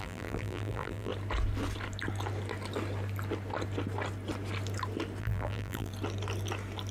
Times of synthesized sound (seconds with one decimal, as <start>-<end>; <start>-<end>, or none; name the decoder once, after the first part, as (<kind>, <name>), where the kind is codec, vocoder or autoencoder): 0.0-1.1 (vocoder, BigVGAN v2); 5.2-5.9